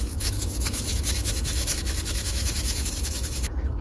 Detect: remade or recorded remade